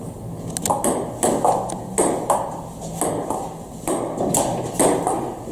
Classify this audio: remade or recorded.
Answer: recorded